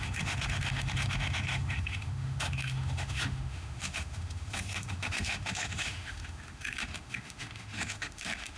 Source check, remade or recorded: remade